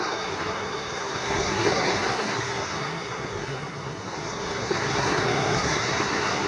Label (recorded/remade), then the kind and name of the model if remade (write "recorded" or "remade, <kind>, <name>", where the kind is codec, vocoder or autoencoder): remade, codec, SNAC